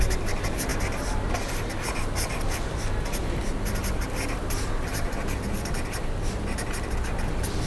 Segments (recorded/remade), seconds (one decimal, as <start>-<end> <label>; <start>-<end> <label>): 0.0-7.7 recorded